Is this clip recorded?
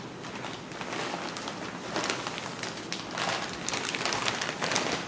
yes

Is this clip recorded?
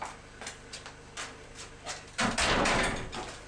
yes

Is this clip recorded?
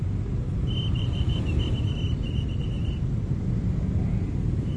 yes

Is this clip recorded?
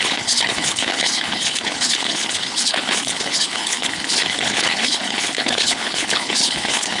no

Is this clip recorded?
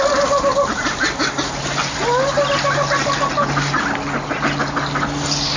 yes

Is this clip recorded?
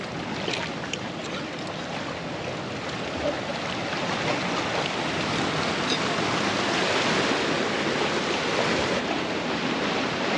yes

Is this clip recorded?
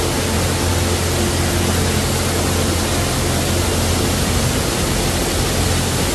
yes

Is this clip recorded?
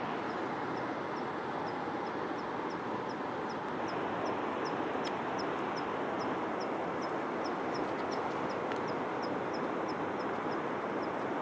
yes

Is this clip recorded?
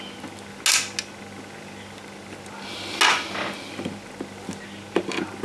yes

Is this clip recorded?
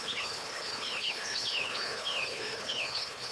no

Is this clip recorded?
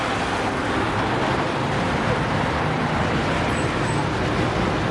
yes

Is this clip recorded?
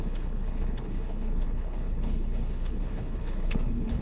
no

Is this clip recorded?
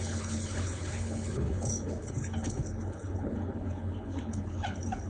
no